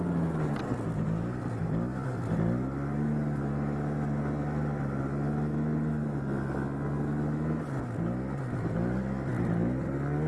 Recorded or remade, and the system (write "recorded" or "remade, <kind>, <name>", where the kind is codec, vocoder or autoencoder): recorded